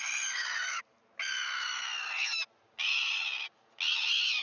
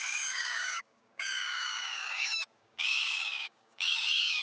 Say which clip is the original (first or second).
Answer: first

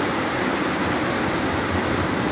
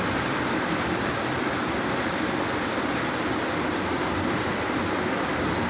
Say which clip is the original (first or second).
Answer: first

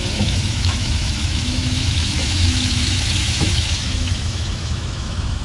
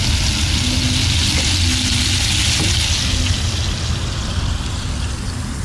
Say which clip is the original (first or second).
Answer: second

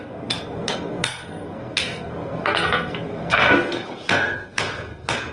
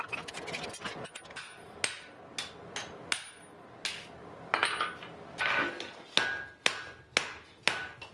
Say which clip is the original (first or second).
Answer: second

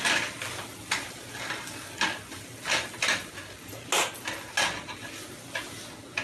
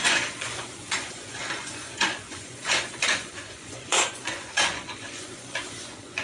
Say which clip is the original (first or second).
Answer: first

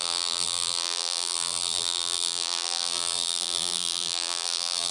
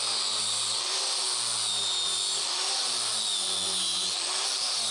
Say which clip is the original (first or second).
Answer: second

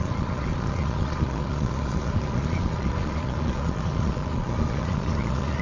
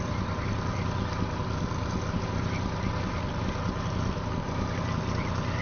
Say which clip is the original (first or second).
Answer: second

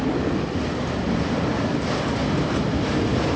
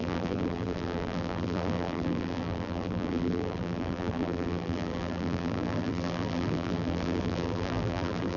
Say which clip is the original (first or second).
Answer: first